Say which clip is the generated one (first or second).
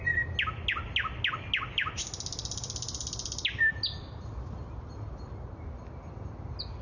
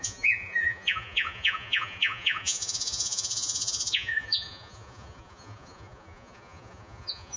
second